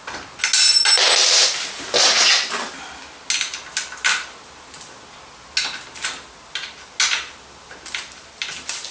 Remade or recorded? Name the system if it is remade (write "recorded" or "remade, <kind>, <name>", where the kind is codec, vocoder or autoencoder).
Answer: recorded